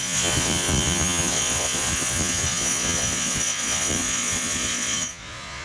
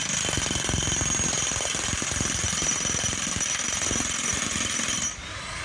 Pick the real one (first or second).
second